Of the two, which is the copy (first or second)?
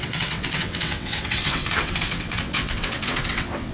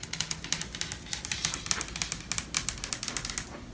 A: first